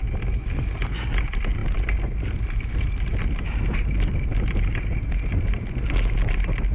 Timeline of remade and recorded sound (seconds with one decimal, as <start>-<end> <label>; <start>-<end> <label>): 0.0-6.7 recorded